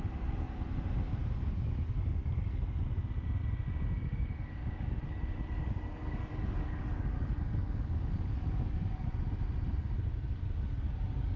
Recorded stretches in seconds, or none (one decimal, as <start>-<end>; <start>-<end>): 0.0-1.4; 2.6-4.0; 9.2-10.1